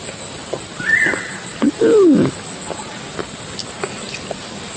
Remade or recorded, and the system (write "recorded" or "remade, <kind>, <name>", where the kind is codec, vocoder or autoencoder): recorded